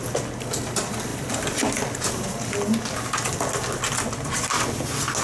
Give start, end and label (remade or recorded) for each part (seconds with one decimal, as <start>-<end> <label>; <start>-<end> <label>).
0.0-5.2 recorded